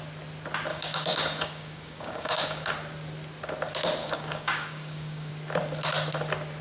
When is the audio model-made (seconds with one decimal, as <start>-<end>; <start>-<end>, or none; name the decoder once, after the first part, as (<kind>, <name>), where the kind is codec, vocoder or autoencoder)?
0.7-2.7 (codec, DAC); 4.0-5.3